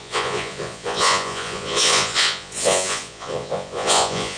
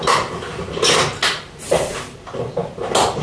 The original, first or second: second